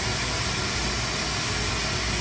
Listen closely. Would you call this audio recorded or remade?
recorded